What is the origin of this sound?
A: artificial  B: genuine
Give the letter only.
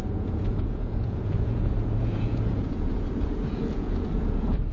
A